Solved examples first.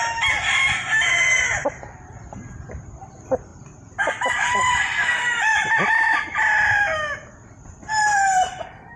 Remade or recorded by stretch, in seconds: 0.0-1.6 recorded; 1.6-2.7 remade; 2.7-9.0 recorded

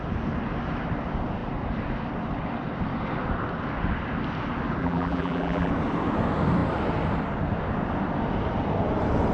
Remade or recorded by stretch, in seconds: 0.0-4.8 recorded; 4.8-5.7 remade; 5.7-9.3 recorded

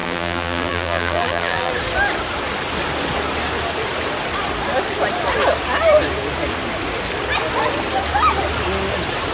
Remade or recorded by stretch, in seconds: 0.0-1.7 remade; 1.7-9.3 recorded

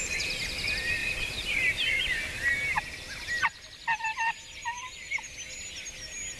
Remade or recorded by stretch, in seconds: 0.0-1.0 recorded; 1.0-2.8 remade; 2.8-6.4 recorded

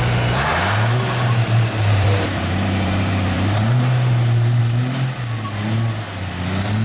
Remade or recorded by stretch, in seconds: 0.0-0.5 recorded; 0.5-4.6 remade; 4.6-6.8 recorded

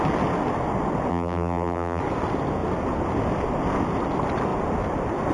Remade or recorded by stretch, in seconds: 0.0-1.1 recorded; 1.1-2.0 remade; 2.0-5.3 recorded

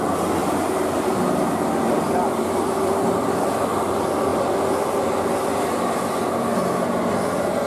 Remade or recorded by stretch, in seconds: 0.0-0.4 recorded; 0.4-1.1 remade; 1.1-7.7 recorded